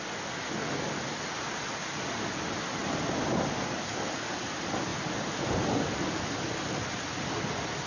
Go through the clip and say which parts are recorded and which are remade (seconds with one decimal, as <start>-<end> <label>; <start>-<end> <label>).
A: 0.0-7.9 recorded